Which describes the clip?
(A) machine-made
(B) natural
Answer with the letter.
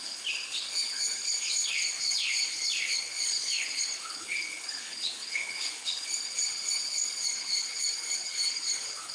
A